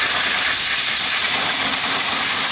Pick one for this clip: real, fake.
real